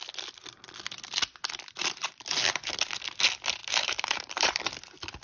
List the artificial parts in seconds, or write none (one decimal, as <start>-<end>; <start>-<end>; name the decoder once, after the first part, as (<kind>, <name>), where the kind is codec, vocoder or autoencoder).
1.8-2.9 (vocoder, BigVGAN v2); 3.6-4.6